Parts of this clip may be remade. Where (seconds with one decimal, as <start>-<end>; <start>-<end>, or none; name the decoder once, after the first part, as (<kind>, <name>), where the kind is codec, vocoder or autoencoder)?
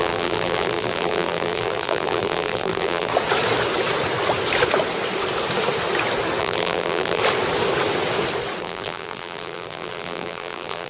0.0-3.1 (vocoder, BigVGAN v2); 6.4-7.2; 8.6-10.9